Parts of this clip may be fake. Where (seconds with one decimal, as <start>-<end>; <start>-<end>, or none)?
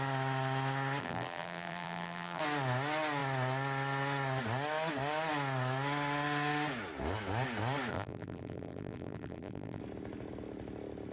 1.0-2.4; 7.9-9.8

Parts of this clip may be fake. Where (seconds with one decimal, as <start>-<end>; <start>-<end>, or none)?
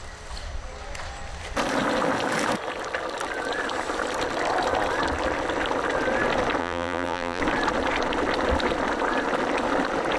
6.6-7.4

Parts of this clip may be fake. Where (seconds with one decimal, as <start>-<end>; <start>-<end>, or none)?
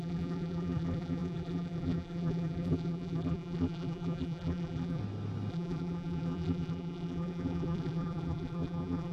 0.0-5.0; 5.5-9.1